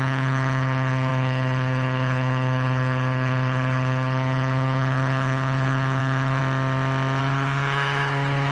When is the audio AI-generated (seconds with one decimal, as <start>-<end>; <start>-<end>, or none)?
0.0-6.4; 7.2-8.5